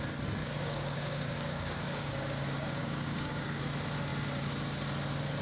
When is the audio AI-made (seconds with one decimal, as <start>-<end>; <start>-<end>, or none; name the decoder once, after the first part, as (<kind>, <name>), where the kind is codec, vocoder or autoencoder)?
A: 0.4-3.6 (codec, DAC)